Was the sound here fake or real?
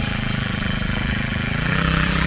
fake